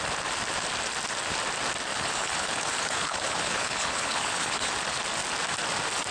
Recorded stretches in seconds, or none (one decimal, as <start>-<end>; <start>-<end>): 0.0-1.9; 4.7-6.1